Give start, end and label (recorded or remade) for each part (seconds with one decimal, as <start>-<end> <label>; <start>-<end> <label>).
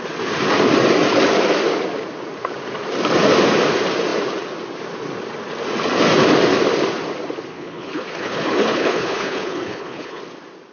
0.0-7.5 recorded; 7.5-10.2 remade; 10.2-10.7 recorded